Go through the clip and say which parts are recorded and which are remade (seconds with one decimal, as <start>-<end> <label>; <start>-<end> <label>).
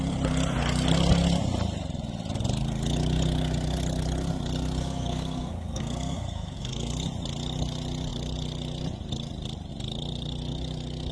0.0-4.8 recorded; 4.8-6.9 remade; 6.9-11.1 recorded